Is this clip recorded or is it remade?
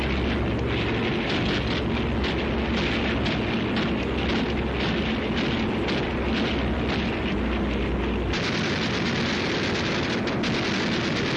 recorded